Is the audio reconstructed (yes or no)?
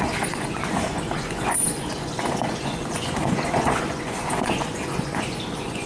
yes